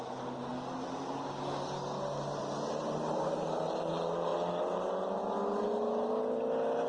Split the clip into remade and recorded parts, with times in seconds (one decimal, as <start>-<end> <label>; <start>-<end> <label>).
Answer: 0.0-6.9 recorded